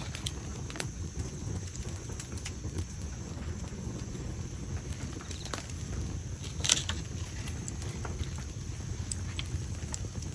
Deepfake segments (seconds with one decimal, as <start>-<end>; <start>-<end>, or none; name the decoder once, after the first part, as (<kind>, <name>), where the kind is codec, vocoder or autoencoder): 0.5-4.3 (vocoder, Vocos)